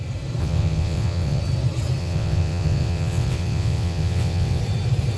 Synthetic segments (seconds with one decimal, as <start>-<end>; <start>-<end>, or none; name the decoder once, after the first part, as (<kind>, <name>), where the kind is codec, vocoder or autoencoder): 0.4-1.4 (vocoder, WaveNeXt); 2.0-4.6